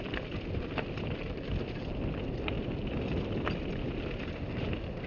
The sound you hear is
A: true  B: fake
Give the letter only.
A